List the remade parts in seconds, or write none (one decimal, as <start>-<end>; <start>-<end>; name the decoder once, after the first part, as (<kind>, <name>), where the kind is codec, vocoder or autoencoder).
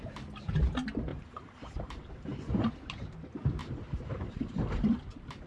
1.1-2.7 (vocoder, BigVGAN v2); 3.6-5.0